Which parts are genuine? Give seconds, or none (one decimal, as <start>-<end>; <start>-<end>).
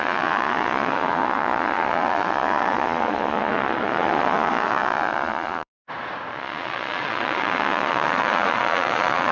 5.7-6.3